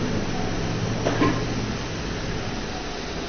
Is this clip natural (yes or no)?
yes